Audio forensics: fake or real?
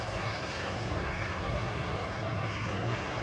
fake